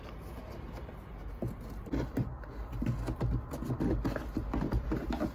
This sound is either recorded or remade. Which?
recorded